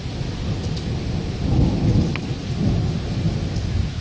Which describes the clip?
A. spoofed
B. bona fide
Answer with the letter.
B